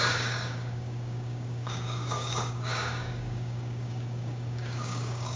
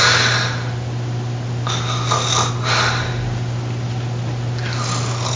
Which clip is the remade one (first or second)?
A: first